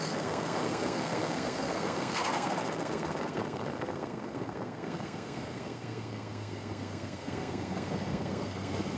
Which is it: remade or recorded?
remade